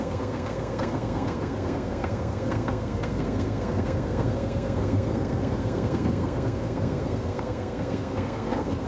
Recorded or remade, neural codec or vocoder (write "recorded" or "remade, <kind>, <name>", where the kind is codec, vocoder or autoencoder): remade, codec, SNAC